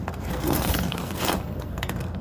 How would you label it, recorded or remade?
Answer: remade